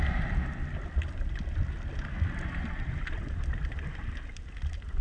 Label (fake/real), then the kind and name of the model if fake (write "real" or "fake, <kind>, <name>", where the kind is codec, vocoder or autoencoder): real